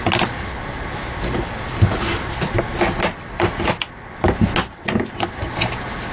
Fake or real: real